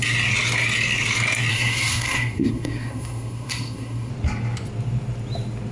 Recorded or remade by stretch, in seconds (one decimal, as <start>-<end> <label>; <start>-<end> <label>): 0.0-1.5 recorded; 1.5-4.1 remade; 4.1-5.7 recorded